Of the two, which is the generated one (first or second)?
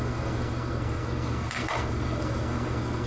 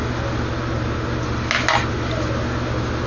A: first